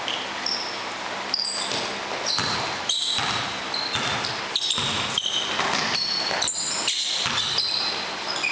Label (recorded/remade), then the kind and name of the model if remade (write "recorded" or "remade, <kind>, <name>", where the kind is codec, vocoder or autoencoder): recorded